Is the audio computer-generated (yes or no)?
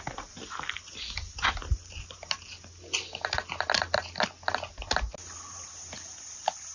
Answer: no